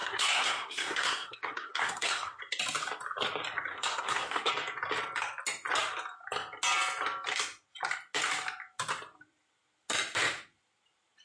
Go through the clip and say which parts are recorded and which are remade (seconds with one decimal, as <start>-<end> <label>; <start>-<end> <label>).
0.0-2.4 remade; 2.4-3.7 recorded; 3.7-4.5 remade; 4.5-11.2 recorded